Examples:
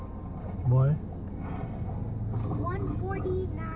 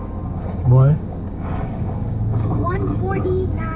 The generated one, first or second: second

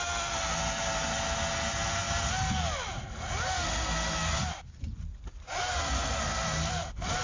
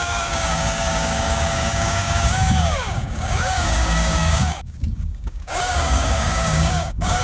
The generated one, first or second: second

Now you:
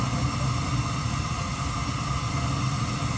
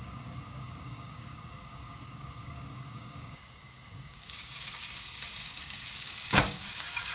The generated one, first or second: second